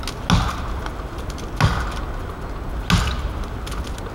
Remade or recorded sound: recorded